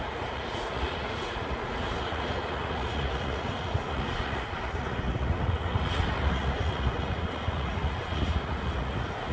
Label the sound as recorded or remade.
remade